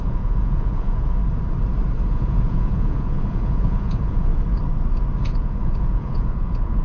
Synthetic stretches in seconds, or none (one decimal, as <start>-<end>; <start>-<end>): 0.0-1.2; 2.1-4.3; 5.2-6.8